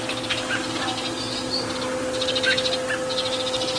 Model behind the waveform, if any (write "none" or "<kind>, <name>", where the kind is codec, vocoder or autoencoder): none